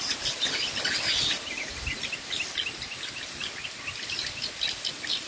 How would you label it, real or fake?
real